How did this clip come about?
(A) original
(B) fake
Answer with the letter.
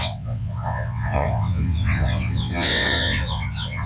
B